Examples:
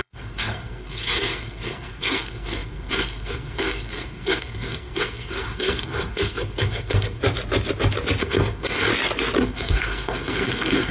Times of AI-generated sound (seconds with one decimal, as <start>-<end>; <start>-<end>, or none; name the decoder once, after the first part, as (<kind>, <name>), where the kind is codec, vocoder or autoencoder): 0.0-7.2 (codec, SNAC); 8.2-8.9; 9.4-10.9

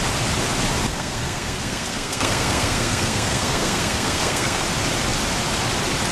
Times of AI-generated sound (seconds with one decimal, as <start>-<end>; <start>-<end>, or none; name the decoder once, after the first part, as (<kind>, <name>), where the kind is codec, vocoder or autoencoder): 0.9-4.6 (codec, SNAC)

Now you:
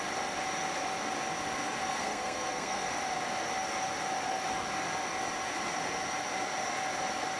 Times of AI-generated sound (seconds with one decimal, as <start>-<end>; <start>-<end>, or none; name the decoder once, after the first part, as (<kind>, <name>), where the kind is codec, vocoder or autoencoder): 1.8-2.9 (codec, SNAC)

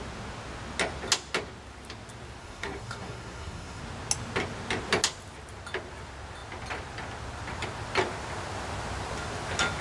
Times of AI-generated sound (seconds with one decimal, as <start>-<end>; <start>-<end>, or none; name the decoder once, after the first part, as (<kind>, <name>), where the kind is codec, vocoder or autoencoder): 2.4-3.8 (codec, SNAC)